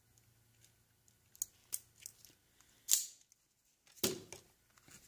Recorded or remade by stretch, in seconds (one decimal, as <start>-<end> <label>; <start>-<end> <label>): 0.0-5.1 recorded